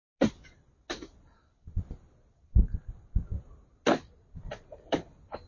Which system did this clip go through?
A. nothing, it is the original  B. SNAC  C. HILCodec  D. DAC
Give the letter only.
A